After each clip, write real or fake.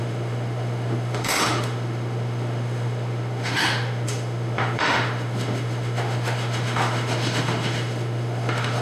fake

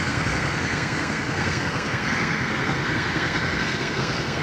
fake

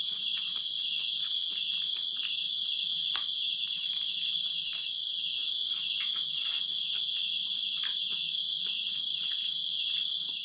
real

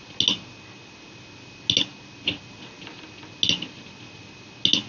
real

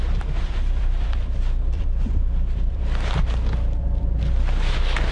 fake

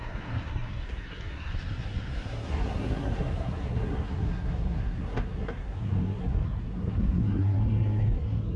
fake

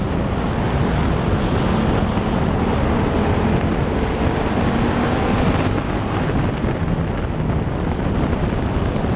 real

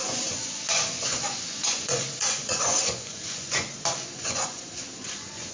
fake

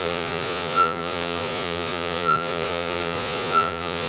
fake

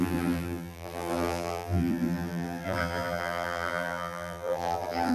fake